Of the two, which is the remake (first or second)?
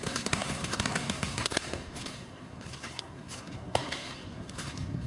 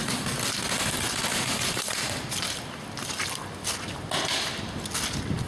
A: first